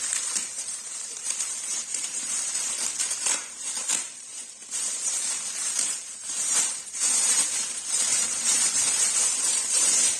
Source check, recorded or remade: remade